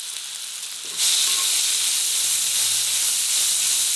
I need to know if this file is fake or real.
real